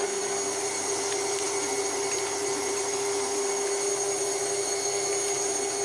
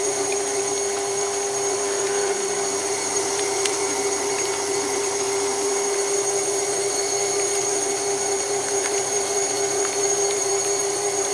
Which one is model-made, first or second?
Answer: second